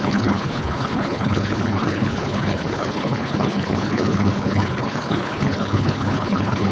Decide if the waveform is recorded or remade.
remade